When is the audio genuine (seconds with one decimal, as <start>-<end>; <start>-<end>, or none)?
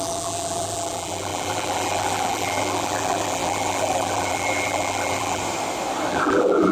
5.4-6.1